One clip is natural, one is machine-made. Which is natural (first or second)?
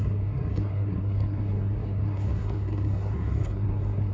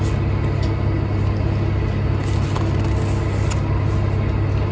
second